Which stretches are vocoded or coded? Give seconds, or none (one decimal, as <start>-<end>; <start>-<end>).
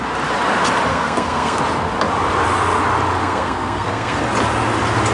0.9-1.6; 3.2-4.2